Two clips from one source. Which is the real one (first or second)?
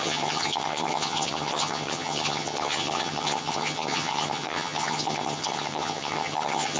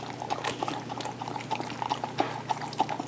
second